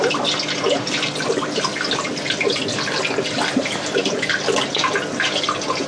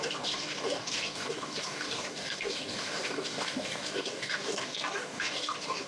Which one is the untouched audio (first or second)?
first